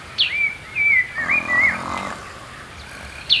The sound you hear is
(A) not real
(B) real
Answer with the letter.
B